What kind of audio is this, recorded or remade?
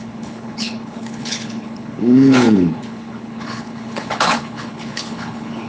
remade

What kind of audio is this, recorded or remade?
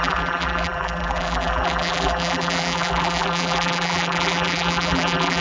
remade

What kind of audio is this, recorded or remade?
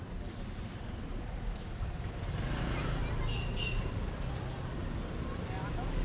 recorded